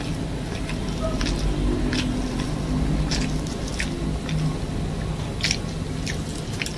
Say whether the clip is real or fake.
real